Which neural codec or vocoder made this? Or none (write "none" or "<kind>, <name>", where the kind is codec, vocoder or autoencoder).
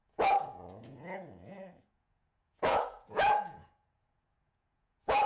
vocoder, Vocos